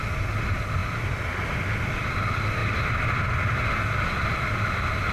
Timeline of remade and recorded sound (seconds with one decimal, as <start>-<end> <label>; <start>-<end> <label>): 0.0-5.1 recorded